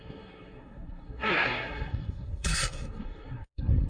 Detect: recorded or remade remade